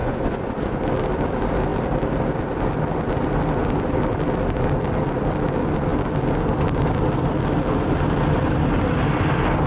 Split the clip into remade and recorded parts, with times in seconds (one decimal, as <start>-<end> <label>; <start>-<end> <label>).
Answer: 0.0-0.8 remade; 0.8-9.7 recorded